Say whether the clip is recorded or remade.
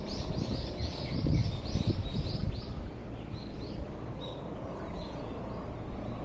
recorded